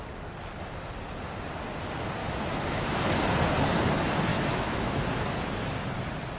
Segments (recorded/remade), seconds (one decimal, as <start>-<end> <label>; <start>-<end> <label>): 0.0-2.2 recorded; 2.2-2.9 remade; 2.9-4.3 recorded; 4.3-5.0 remade; 5.0-6.4 recorded